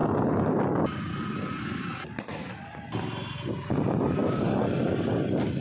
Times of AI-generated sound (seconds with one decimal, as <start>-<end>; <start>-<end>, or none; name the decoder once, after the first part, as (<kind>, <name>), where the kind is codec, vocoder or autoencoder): 0.0-0.6 (vocoder, BigVGAN v2)